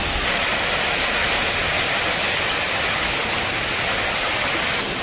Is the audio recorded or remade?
recorded